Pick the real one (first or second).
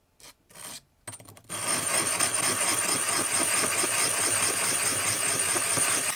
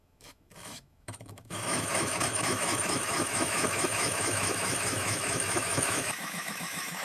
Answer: first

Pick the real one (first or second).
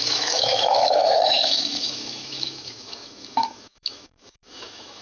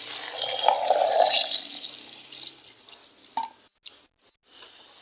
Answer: second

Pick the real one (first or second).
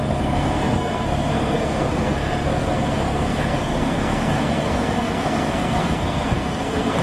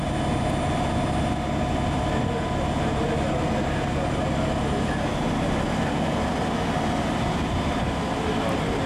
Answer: second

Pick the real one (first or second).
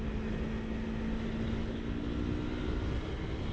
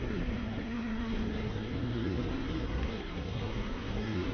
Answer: first